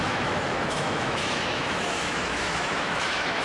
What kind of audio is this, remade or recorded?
remade